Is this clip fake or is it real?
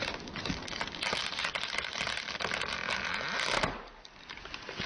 real